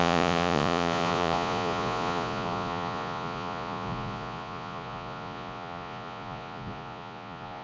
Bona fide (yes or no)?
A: no